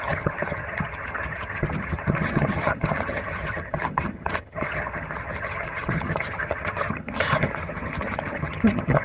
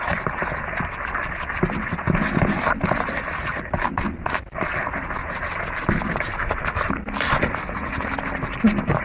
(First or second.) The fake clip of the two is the first